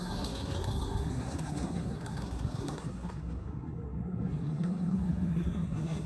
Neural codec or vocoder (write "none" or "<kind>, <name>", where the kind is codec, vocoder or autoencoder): codec, SNAC